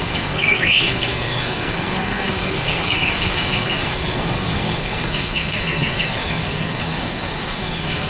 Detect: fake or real fake